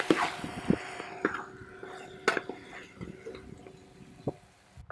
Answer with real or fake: real